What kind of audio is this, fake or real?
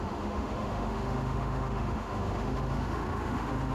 fake